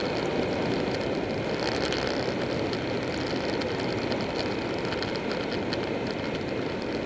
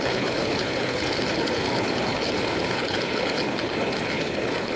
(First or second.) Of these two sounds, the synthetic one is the second